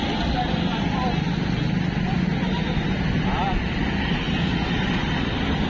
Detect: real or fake real